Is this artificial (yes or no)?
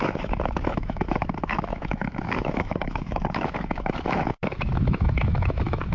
yes